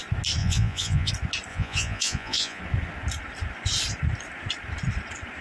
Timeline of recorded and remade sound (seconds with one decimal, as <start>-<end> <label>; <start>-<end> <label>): 0.0-0.4 recorded; 0.4-1.1 remade; 1.1-1.5 recorded; 1.5-2.6 remade; 2.6-5.4 recorded